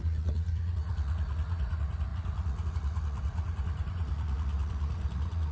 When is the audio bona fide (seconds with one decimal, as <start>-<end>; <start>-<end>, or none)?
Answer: none